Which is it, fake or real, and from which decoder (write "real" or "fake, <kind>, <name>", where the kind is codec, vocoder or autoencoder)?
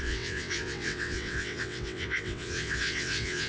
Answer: fake, vocoder, WaveNeXt